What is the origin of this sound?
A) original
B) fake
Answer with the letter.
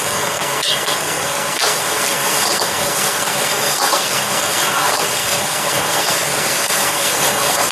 B